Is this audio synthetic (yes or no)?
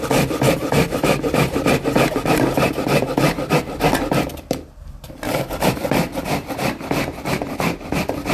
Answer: yes